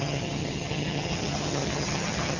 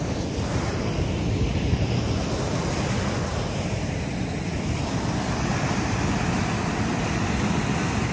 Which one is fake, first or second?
first